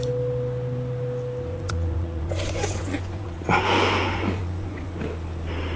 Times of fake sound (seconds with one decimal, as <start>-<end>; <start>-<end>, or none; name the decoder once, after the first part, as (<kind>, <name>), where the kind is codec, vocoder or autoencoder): 1.5-5.0 (vocoder, Vocos)